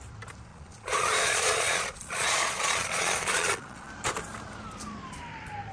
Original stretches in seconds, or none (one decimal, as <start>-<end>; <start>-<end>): 0.0-0.5; 3.9-5.7